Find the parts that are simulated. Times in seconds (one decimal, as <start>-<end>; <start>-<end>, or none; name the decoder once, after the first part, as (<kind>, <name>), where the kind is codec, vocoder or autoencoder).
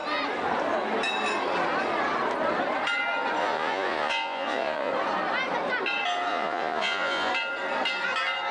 3.4-4.9 (vocoder, Vocos); 6.3-7.3